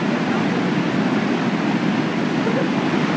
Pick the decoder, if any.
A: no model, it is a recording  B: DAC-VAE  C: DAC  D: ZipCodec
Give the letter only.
A